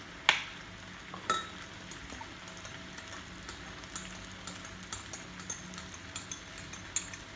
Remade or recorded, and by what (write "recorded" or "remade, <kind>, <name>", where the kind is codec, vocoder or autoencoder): recorded